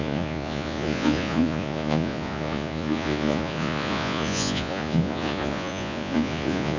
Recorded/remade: remade